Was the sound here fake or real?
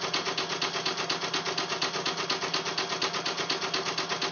real